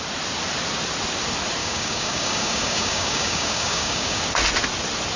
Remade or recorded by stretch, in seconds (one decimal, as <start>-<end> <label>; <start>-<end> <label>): 0.0-1.6 recorded; 1.6-4.2 remade; 4.2-5.2 recorded

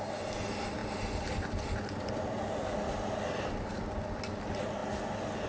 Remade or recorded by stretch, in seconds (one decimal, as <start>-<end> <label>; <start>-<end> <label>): 0.0-5.5 recorded

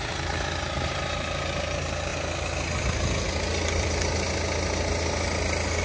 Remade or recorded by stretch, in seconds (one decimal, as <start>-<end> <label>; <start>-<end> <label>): 0.0-5.8 recorded

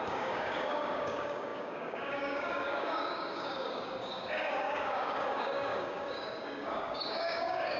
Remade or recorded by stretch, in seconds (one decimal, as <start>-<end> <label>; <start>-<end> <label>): 0.0-7.8 remade

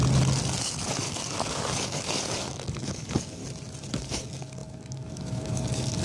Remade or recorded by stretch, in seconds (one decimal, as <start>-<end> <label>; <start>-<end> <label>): 0.0-0.6 recorded; 0.6-3.4 remade; 3.4-3.9 recorded; 3.9-6.0 remade

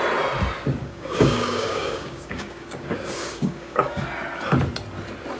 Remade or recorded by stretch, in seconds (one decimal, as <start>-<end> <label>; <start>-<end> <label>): 0.0-0.8 recorded; 0.8-4.0 remade; 4.0-5.4 recorded